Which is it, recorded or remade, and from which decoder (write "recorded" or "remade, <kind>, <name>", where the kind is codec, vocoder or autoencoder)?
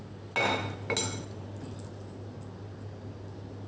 recorded